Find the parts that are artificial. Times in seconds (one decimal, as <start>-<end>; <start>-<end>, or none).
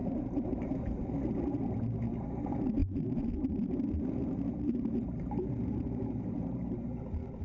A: 0.0-1.0; 2.8-6.8